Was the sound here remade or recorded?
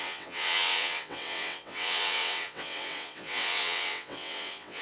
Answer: remade